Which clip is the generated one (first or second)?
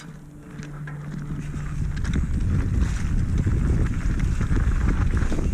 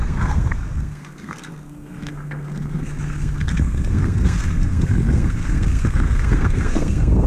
second